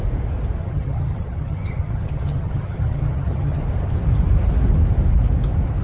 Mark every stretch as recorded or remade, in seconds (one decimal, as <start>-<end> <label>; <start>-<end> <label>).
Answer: 0.0-0.6 recorded; 0.6-3.6 remade; 3.6-5.8 recorded